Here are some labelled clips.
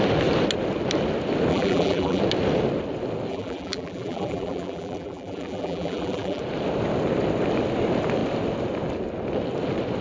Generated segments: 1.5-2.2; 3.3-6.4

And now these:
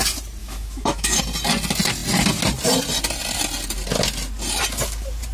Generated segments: 0.4-1.2

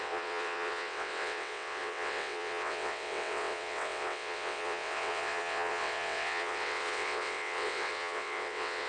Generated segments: 0.0-8.9

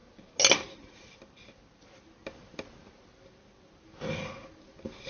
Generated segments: none